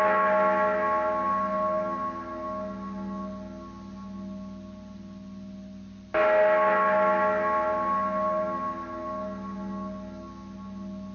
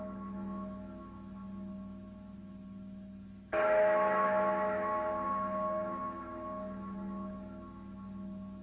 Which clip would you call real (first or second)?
first